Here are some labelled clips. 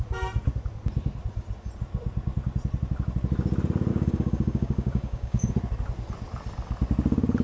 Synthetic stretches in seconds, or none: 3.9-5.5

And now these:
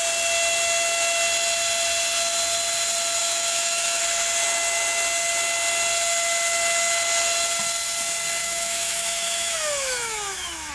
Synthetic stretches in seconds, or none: 3.2-4.0; 8.4-10.7

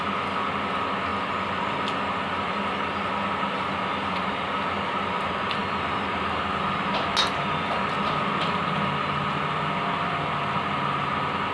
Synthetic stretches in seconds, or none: none

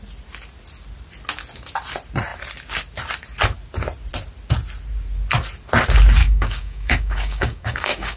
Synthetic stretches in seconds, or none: 6.2-8.2

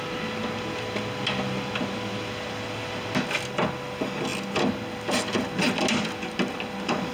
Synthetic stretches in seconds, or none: none

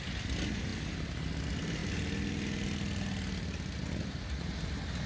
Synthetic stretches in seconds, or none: none